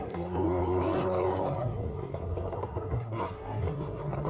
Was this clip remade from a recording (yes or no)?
yes